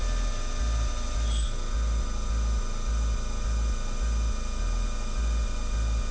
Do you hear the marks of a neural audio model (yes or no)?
no